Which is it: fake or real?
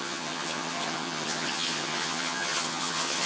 fake